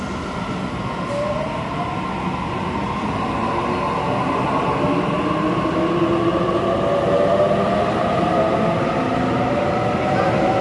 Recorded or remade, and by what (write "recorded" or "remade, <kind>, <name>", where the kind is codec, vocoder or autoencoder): recorded